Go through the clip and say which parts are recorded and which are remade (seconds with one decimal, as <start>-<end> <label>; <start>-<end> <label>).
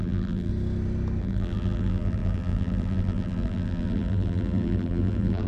0.0-0.5 remade; 0.5-1.2 recorded; 1.2-5.5 remade